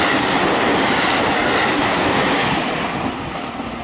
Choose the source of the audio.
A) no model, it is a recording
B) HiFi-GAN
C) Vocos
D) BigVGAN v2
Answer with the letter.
A